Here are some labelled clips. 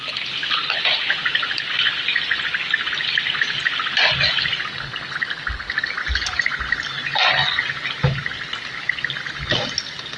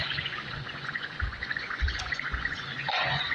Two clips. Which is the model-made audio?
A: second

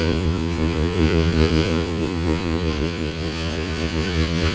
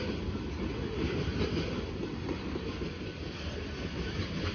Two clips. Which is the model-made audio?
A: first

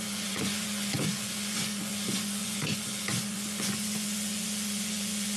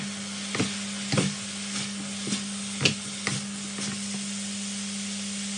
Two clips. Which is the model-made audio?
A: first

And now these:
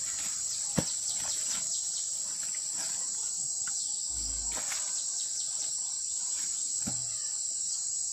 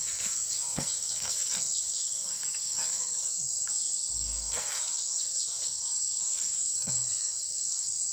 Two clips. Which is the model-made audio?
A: second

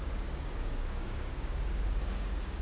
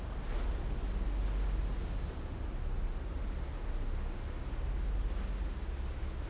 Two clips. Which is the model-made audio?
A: first